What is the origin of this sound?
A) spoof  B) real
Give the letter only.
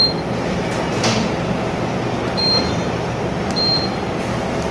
B